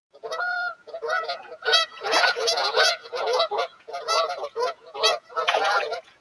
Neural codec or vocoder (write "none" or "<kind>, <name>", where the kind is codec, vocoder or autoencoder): vocoder, Vocos